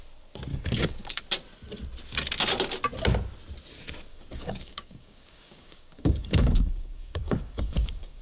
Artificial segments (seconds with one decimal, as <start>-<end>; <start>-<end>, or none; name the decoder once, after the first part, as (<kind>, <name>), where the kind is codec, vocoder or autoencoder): 0.5-1.2 (codec, DAC); 4.1-8.2